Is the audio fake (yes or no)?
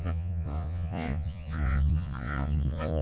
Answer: yes